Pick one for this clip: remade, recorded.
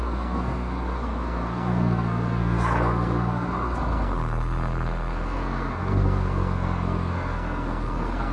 remade